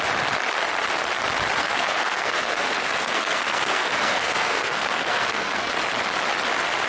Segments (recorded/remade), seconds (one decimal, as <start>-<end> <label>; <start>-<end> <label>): 0.0-1.6 recorded; 1.6-5.7 remade; 5.7-6.9 recorded